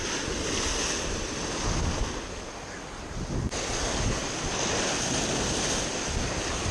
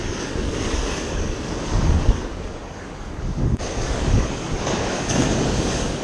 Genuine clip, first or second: first